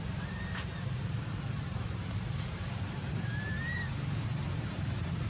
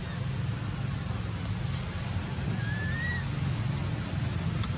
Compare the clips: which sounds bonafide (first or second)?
second